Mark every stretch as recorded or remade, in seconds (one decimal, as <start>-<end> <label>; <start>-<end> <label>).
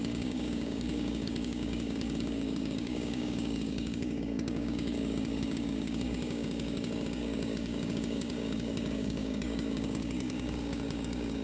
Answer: 0.0-11.4 remade